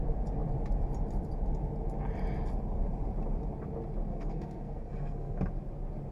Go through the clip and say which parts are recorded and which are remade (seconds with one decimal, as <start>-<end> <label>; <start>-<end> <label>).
0.0-4.1 recorded; 4.1-5.4 remade; 5.4-6.1 recorded